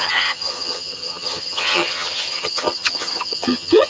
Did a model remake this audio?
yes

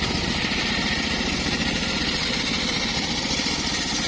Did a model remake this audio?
no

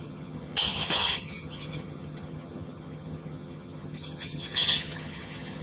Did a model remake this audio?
yes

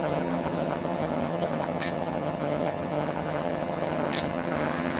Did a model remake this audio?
yes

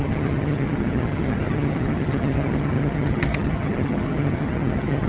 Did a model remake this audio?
yes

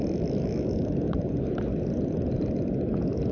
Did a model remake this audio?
no